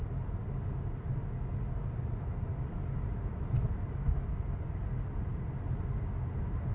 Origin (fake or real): real